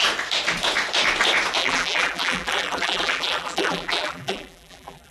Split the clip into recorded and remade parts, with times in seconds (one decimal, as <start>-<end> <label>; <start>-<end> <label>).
0.0-1.6 recorded; 1.6-5.1 remade